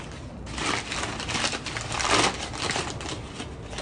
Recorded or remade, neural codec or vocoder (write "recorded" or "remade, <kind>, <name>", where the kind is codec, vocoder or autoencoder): recorded